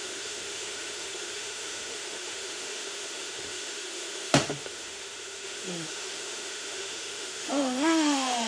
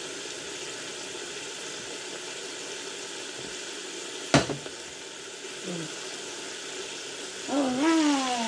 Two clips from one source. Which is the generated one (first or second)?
first